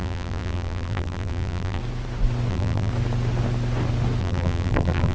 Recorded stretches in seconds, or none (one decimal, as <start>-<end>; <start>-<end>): 1.8-2.5; 2.9-4.2